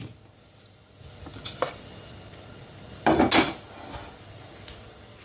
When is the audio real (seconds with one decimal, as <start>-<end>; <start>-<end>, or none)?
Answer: 0.0-5.2